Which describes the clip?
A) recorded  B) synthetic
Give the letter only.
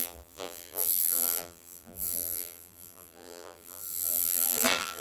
B